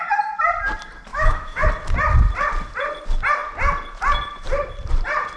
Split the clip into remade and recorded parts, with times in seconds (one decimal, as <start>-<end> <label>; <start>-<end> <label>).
0.0-1.1 recorded; 1.1-1.7 remade; 1.7-5.4 recorded